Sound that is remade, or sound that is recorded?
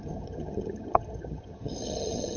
remade